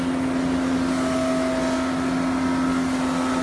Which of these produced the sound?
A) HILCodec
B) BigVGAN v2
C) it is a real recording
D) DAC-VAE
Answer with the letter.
C